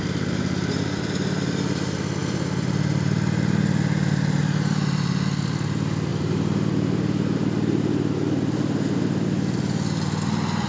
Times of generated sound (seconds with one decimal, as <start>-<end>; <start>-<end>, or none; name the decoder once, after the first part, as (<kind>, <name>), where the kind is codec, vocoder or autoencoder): 0.0-10.7 (vocoder, BigVGAN v2)